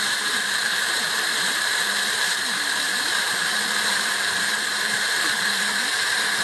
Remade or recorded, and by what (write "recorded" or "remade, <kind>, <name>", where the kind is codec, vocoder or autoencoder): remade, vocoder, BigVGAN v2